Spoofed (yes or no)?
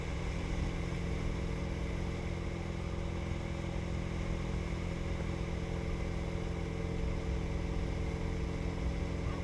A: no